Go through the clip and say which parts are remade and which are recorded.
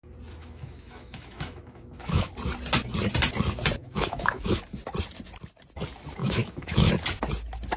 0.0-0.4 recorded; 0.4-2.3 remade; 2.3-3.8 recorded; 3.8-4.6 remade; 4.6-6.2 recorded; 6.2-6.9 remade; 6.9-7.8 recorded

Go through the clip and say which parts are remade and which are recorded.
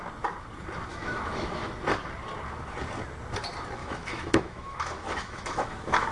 0.0-0.9 recorded; 0.9-1.7 remade; 1.7-3.8 recorded; 3.8-6.1 remade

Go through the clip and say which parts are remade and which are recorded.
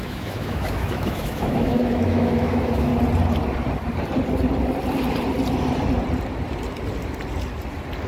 0.0-2.9 remade; 2.9-8.1 recorded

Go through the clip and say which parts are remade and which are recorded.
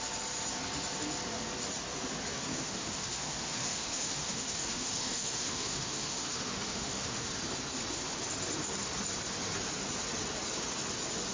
0.0-2.5 recorded; 2.5-7.3 remade; 7.3-11.3 recorded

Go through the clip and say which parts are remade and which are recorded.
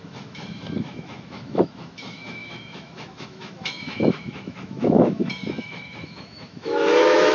0.0-7.3 remade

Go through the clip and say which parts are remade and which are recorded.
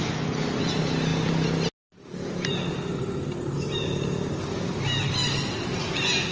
0.0-6.3 recorded